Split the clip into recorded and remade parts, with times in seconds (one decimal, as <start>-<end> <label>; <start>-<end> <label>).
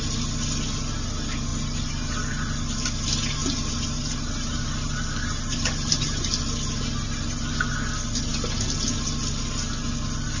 0.0-1.5 recorded; 1.5-2.6 remade; 2.6-3.4 recorded; 3.4-6.4 remade; 6.4-10.4 recorded